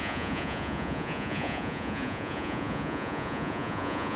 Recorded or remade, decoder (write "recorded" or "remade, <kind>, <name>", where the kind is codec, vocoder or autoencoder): remade, vocoder, Vocos